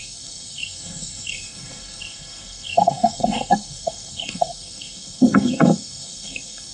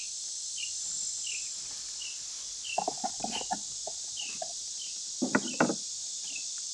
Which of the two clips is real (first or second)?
second